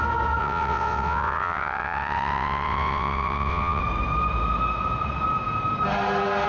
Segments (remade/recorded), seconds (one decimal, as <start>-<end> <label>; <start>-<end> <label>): 0.0-0.4 recorded; 0.4-3.8 remade; 3.8-6.5 recorded